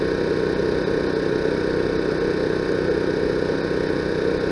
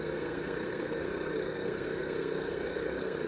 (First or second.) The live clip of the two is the first